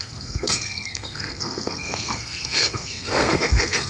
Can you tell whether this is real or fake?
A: fake